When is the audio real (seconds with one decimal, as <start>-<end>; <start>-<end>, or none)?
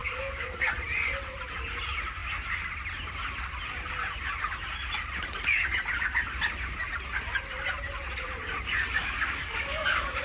0.7-9.0